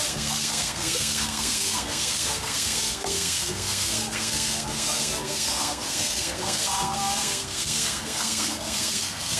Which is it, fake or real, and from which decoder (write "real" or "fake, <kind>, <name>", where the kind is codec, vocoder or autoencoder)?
fake, codec, SNAC